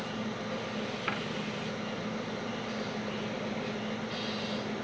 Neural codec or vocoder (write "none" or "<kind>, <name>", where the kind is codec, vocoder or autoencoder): none